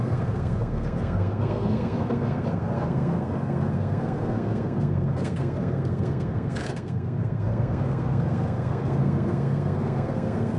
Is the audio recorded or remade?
remade